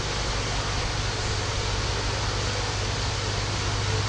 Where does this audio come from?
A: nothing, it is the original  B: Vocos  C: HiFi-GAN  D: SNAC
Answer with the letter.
A